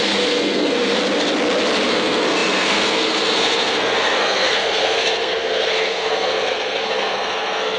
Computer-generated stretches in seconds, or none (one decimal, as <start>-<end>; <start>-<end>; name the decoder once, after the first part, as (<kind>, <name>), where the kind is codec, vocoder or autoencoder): 0.0-1.0 (codec, SNAC); 1.9-7.8